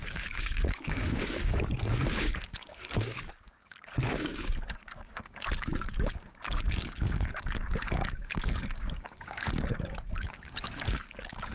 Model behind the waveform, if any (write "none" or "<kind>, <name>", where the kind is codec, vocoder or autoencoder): codec, DAC